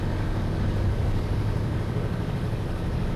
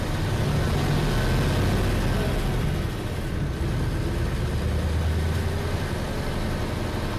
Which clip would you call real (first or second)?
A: second